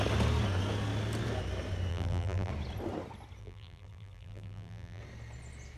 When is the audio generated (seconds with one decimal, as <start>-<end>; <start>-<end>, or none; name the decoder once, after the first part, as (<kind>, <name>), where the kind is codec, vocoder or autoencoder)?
1.9-2.5 (vocoder, BigVGAN v2); 3.4-5.0